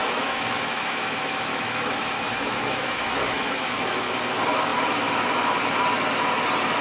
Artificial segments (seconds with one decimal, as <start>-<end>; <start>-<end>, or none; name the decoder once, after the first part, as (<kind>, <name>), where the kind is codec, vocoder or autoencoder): 0.0-3.8 (autoencoder, DAC-VAE)